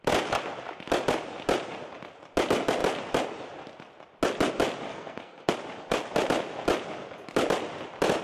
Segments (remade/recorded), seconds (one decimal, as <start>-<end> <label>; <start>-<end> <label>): 0.0-4.9 recorded; 4.9-5.5 remade; 5.5-8.2 recorded

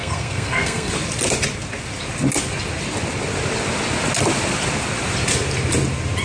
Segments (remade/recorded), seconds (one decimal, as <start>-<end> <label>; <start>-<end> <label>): 0.0-0.9 remade; 0.9-6.2 recorded

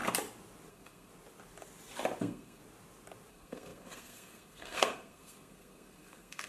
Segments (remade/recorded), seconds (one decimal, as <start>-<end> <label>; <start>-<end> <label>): 0.0-0.7 recorded; 0.7-1.1 remade; 1.1-2.2 recorded; 2.2-2.6 remade; 2.6-3.3 recorded; 3.3-6.5 remade

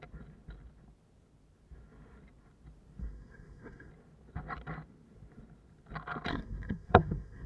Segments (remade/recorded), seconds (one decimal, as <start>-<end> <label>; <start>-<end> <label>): 0.0-3.0 recorded; 3.0-3.9 remade; 3.9-6.3 recorded; 6.3-7.5 remade